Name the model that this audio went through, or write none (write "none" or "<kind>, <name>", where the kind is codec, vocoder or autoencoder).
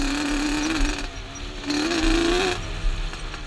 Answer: none